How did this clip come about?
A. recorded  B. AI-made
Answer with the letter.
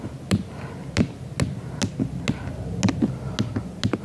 A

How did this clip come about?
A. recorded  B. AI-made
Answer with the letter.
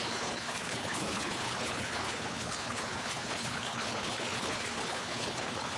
B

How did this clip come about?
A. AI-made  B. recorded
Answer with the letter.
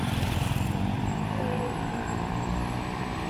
A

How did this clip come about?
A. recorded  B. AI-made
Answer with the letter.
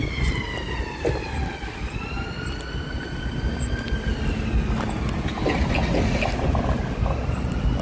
A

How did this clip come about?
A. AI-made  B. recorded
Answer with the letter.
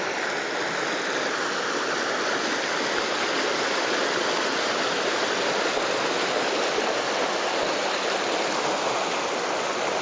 B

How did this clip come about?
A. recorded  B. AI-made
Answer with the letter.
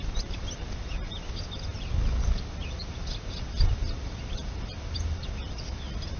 A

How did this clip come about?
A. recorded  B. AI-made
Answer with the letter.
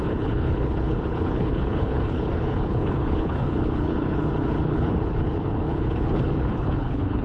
B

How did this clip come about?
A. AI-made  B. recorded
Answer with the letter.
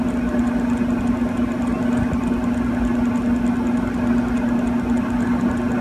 B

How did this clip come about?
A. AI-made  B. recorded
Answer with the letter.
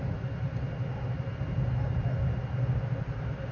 B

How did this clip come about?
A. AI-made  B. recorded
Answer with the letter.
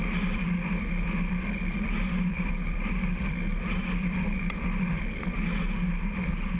A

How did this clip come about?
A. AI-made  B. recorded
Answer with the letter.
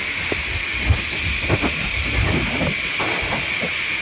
B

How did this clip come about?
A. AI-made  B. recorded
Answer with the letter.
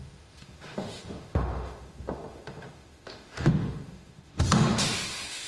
A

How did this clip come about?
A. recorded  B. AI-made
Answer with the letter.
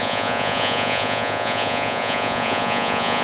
B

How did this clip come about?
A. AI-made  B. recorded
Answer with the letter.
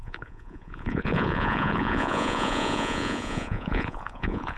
A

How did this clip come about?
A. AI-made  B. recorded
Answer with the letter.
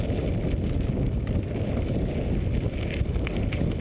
B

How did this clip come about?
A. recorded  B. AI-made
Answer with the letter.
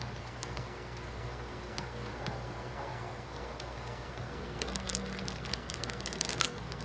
B